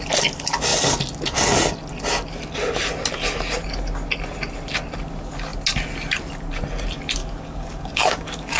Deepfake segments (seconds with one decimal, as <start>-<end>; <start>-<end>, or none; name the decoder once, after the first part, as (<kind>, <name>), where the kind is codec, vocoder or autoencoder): 7.2-8.6 (codec, DAC)